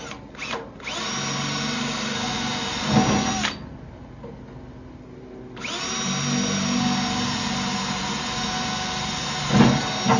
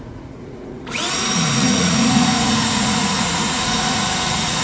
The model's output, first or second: second